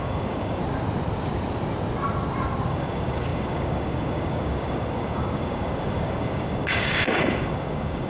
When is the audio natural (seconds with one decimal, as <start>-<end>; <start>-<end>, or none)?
0.6-2.7